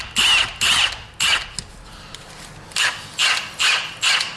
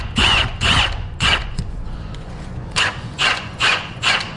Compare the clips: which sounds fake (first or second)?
second